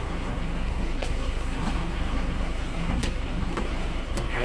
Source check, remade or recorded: remade